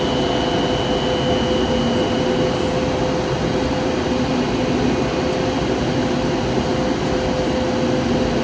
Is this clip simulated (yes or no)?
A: no